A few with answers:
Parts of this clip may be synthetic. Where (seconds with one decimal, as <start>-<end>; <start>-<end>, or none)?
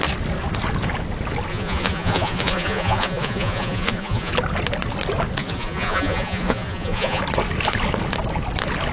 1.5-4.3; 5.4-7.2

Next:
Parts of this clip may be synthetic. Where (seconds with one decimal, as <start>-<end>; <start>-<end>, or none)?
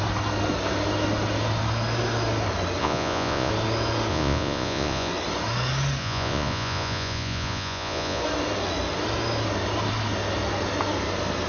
2.8-3.5; 4.1-5.1; 6.0-8.2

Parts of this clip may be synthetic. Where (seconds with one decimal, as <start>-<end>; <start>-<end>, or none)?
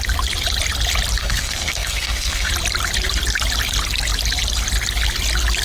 1.2-2.5